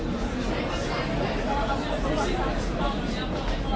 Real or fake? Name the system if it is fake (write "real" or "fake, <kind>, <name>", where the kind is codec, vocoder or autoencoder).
real